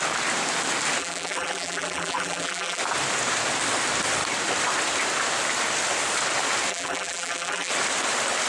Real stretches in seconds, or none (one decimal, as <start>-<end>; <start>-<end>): 0.0-1.0; 2.8-6.7; 7.7-8.5